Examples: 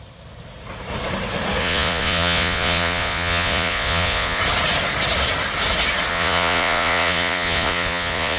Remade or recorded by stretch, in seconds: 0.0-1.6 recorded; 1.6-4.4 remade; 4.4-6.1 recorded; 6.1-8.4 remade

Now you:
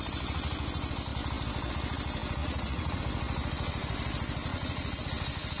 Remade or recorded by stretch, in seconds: 0.0-2.4 recorded; 2.4-3.0 remade; 3.0-4.5 recorded; 4.5-5.0 remade; 5.0-5.6 recorded